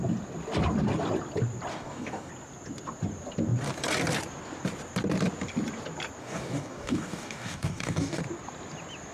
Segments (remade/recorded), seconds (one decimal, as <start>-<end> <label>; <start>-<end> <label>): 0.0-1.7 recorded; 1.7-2.3 remade; 2.3-6.2 recorded; 6.2-8.2 remade; 8.2-9.1 recorded